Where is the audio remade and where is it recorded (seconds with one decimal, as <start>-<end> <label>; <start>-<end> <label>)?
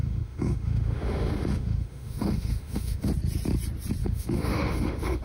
0.0-3.1 remade; 3.1-4.0 recorded; 4.0-5.2 remade